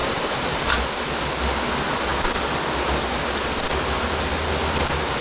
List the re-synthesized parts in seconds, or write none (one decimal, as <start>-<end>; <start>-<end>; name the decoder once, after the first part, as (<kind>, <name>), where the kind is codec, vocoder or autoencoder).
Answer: 0.0-0.7 (vocoder, BigVGAN v2)